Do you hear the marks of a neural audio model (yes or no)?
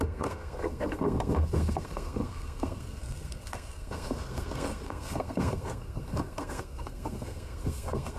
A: yes